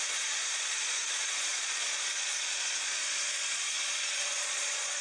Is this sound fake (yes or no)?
yes